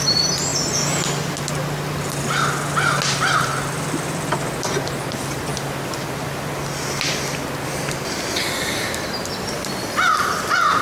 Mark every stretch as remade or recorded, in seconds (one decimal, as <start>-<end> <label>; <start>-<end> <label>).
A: 0.0-0.5 remade; 0.5-3.9 recorded; 3.9-5.5 remade; 5.5-10.2 recorded; 10.2-10.8 remade